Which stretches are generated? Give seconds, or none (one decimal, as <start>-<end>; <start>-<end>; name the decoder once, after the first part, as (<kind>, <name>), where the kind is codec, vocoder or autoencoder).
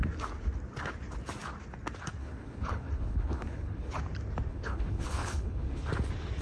2.2-3.9 (codec, HILCodec); 4.5-5.9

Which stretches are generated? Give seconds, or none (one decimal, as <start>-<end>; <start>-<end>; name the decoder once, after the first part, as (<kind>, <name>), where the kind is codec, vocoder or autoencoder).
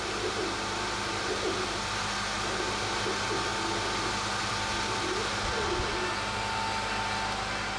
none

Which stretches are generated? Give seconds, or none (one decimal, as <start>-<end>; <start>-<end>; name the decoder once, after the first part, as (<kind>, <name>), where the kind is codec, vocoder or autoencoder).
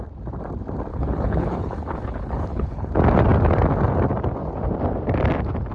0.9-2.9 (codec, HILCodec)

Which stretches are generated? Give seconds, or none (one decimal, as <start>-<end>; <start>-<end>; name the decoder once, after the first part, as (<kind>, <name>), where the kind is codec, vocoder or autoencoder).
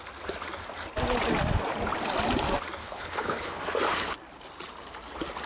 2.8-3.6 (codec, HILCodec)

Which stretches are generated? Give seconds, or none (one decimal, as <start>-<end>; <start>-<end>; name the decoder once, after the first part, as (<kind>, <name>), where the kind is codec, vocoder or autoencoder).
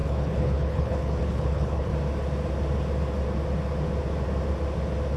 0.0-1.9 (codec, HILCodec)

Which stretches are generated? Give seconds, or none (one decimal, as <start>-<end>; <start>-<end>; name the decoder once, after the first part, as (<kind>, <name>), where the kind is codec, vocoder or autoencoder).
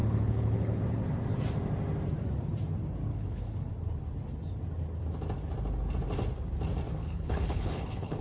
0.0-0.8 (codec, HILCodec); 3.1-3.7; 7.0-8.2